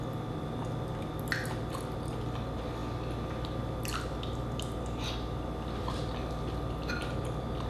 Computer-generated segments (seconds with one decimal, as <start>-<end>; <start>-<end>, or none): none